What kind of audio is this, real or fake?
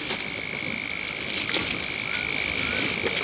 real